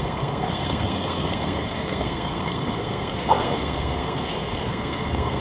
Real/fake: fake